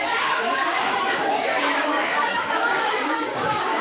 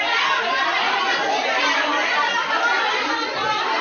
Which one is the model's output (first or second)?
first